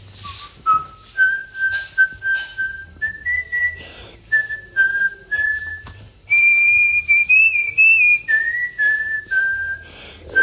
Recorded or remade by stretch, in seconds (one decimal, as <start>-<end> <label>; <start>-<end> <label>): 0.0-1.4 recorded; 1.4-2.1 remade; 2.1-2.5 recorded; 2.5-7.7 remade; 7.7-10.4 recorded